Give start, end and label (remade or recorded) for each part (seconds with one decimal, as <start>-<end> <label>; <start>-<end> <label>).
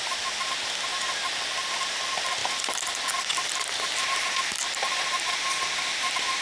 0.0-0.9 remade; 0.9-1.5 recorded; 1.5-2.4 remade; 2.4-5.8 recorded; 5.8-6.4 remade